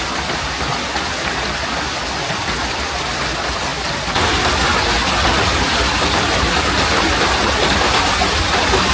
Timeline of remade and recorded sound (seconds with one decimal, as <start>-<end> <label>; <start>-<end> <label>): 0.0-8.9 recorded